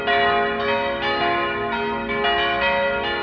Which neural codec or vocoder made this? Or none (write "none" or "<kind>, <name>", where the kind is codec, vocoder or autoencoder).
none